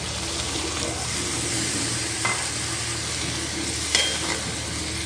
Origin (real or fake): real